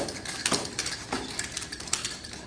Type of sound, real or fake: real